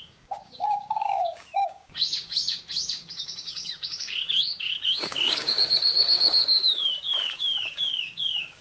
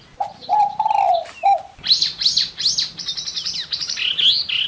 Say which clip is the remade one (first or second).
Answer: first